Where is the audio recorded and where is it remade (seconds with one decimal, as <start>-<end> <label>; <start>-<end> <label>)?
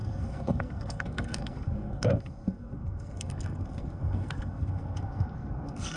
0.0-6.0 remade